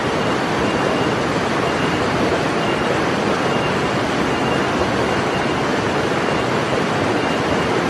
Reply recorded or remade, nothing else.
recorded